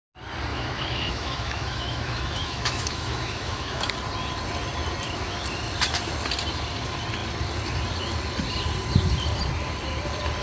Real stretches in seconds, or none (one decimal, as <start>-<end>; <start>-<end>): 0.0-0.5; 3.9-10.4